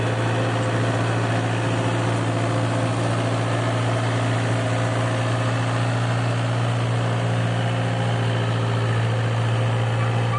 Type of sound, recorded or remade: recorded